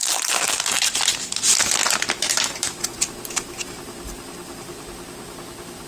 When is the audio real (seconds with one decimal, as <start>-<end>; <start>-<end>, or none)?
0.0-5.9

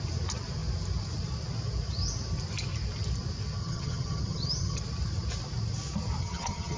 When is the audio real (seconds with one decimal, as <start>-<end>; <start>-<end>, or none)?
0.0-3.6; 4.8-6.2

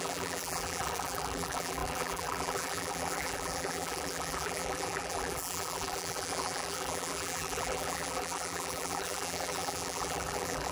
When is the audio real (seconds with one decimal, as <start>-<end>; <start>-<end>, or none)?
none

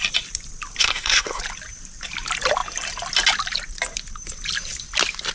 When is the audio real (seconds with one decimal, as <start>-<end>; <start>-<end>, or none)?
0.0-0.8; 1.4-5.3

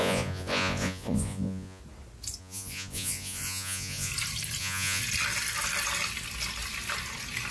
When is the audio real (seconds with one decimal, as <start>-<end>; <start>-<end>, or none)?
1.8-2.4; 4.1-4.6; 5.0-7.5